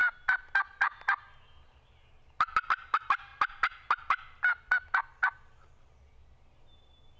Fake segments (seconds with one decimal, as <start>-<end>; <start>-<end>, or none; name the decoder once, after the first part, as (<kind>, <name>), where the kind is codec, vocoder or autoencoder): none

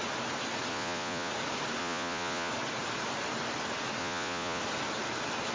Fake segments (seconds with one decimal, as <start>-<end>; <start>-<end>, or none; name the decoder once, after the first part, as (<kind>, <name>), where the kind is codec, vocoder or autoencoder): 0.7-1.3 (vocoder, Vocos); 1.8-2.5; 4.0-4.6

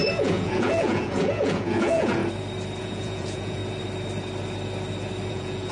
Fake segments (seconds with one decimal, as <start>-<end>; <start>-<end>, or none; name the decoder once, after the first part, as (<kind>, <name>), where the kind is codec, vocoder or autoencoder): 0.0-2.2 (vocoder, Vocos); 2.8-3.6; 5.3-5.7

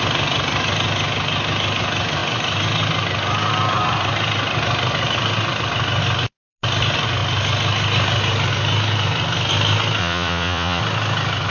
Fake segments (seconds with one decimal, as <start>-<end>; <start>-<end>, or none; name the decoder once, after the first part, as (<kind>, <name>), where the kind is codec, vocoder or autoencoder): 10.0-10.8 (vocoder, Vocos)

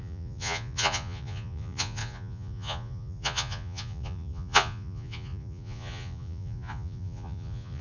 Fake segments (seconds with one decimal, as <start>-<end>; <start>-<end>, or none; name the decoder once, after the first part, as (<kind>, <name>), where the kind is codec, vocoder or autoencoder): 0.0-7.8 (vocoder, Vocos)

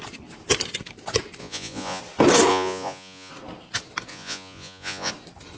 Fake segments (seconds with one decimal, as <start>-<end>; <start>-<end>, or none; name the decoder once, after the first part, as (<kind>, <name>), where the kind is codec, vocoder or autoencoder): 1.4-2.0 (vocoder, Vocos); 2.5-3.3; 4.1-5.1

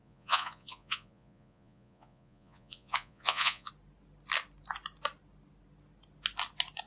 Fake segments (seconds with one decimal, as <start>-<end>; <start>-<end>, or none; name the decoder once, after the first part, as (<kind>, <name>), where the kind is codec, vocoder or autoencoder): 0.0-3.7 (vocoder, Vocos)